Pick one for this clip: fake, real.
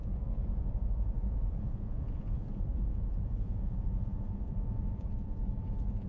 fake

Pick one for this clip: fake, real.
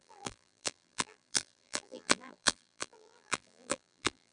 fake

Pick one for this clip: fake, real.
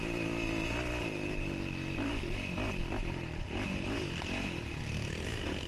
real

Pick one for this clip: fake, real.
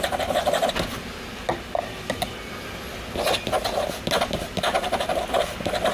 real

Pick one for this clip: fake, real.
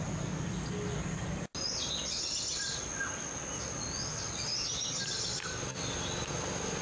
real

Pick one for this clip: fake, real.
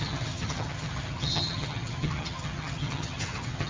fake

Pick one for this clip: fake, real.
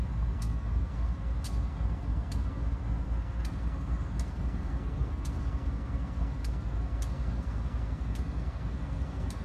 fake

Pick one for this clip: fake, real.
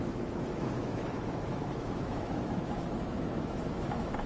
fake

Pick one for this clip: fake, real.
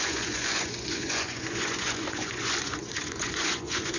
fake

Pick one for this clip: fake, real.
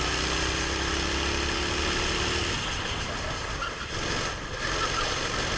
real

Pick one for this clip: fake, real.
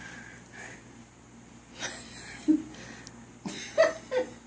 real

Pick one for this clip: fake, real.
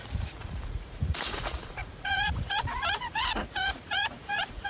fake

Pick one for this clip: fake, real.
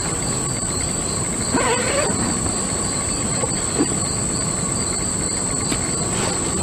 real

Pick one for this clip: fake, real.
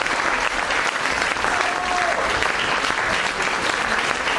real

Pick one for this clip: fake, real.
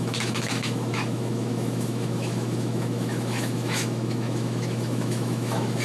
fake